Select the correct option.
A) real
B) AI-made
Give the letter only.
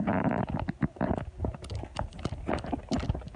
A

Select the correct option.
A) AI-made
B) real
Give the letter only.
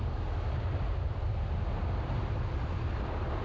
B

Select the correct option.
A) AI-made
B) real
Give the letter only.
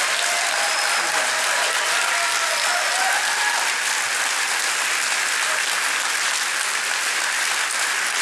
B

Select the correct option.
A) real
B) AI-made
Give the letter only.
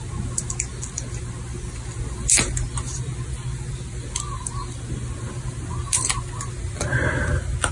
A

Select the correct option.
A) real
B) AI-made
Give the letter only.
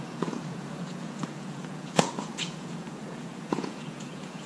B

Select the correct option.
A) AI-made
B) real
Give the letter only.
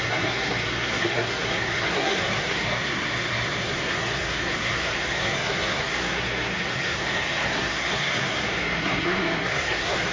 A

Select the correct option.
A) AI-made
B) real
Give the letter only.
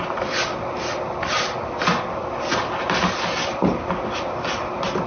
B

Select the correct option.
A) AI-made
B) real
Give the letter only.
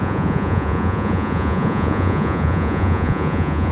A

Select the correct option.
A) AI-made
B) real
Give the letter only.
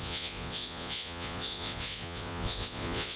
A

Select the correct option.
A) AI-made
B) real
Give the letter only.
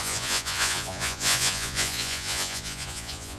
A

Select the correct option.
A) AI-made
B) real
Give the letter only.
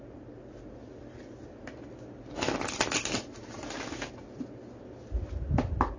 B